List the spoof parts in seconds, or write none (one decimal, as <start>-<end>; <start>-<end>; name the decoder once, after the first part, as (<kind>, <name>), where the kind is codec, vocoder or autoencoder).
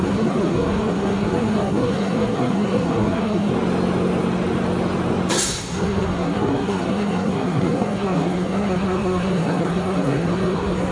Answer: 0.0-3.5 (codec, SNAC); 5.3-10.9